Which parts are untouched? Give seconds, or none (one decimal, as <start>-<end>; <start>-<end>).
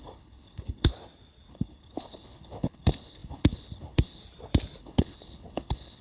0.9-1.5; 4.2-4.8